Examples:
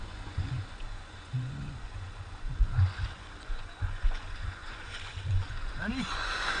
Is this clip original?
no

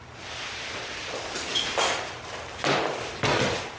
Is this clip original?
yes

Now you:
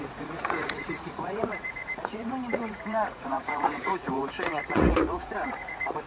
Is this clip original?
no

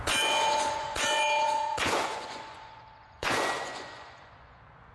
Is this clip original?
no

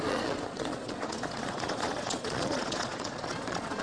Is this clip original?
no